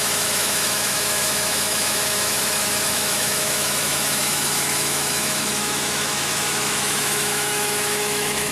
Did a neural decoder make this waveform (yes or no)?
yes